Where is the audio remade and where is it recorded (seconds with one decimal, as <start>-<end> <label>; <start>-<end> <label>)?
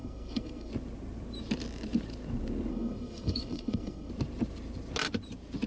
0.0-0.7 remade; 0.7-2.7 recorded; 2.7-4.1 remade; 4.1-5.7 recorded